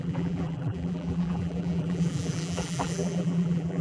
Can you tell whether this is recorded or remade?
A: remade